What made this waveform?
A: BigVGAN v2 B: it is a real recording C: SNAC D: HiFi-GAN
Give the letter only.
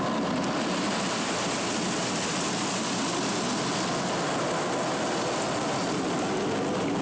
B